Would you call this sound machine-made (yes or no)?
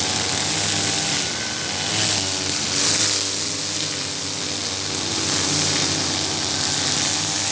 no